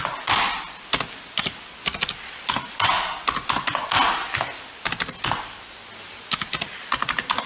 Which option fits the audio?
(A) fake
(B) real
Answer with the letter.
B